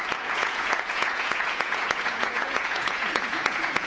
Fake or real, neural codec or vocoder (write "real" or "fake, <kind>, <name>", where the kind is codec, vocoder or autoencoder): fake, vocoder, Vocos